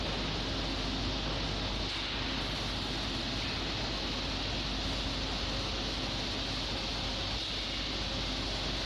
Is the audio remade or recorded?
recorded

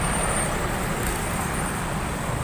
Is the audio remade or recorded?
remade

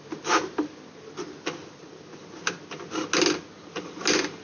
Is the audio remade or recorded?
recorded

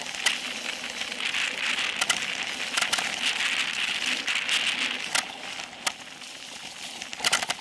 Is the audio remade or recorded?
recorded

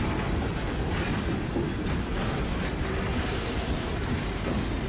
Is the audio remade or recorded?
recorded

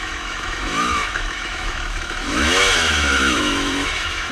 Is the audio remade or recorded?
remade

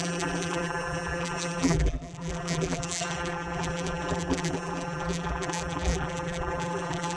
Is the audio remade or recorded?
remade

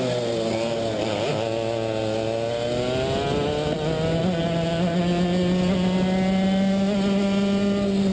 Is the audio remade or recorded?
recorded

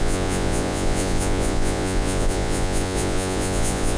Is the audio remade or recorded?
remade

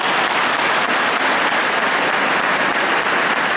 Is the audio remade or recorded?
recorded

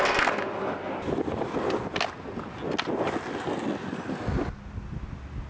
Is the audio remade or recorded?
recorded